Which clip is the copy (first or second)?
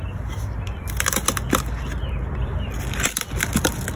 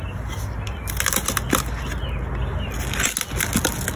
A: first